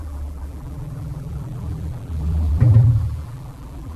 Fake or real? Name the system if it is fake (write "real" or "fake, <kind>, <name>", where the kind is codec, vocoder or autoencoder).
fake, vocoder, BigVGAN v2